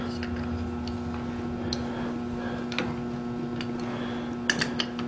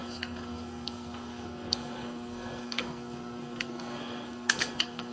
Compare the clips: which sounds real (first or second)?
first